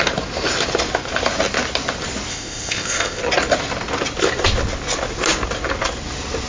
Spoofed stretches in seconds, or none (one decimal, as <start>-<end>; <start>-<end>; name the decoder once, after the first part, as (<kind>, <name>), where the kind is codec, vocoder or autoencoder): 2.3-3.2 (codec, ZipCodec)